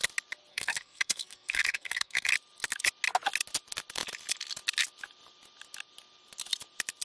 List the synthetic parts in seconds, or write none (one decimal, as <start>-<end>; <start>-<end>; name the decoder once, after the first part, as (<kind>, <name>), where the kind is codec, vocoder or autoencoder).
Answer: 0.5-2.3 (codec, SNAC)